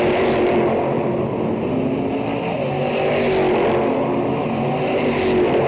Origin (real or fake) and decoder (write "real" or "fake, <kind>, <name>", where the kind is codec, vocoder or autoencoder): real